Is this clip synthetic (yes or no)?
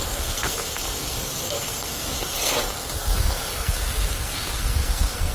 yes